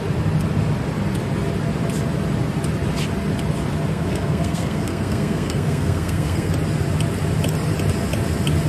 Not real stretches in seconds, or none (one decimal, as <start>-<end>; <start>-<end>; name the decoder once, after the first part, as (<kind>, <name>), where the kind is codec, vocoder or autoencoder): 3.9-6.5 (codec, SNAC)